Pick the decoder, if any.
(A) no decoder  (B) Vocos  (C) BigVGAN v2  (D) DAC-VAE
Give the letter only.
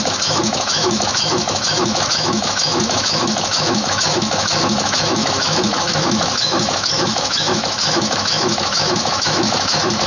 D